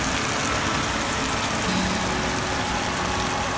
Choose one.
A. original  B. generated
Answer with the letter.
A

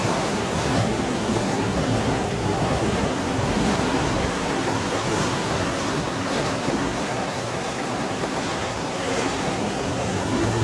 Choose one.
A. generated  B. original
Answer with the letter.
A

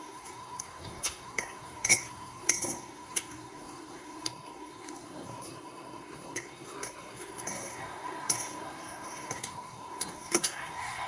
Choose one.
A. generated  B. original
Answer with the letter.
A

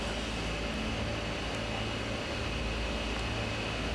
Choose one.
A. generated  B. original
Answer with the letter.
B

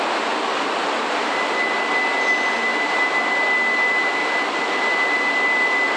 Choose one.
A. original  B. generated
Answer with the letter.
A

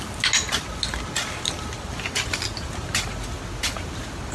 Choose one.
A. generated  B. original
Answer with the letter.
B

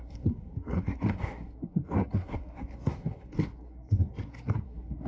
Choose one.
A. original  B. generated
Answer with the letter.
B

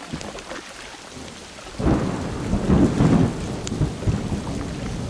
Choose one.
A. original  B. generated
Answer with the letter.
A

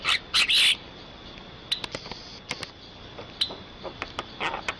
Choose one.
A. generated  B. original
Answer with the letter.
B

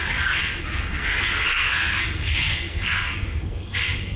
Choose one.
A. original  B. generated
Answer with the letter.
B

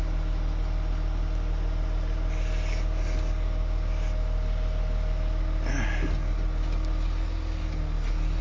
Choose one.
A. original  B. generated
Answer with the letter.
A